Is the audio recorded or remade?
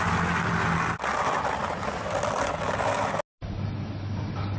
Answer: recorded